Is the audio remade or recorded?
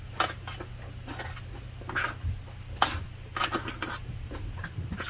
recorded